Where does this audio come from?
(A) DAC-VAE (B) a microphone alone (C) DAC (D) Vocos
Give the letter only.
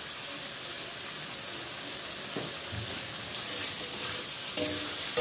B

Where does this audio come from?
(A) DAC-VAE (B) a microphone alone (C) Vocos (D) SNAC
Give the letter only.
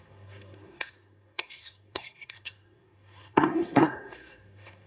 D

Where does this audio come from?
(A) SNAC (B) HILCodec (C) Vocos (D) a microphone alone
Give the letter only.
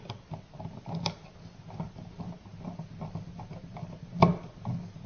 D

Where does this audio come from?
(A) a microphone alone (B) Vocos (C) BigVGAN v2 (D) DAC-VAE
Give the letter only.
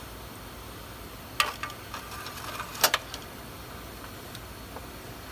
A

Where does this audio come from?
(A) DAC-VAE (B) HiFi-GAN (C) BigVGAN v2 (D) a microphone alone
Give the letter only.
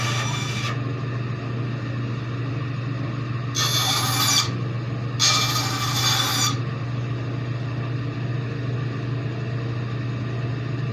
D